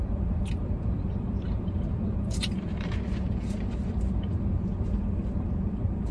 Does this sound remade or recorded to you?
remade